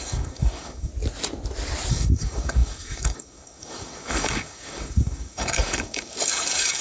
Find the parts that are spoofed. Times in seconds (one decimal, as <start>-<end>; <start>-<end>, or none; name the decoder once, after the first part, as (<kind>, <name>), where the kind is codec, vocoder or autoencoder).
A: 0.0-0.9 (codec, DAC); 1.9-6.8